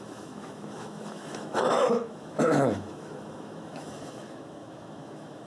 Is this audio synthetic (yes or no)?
yes